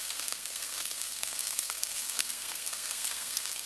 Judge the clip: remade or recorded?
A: remade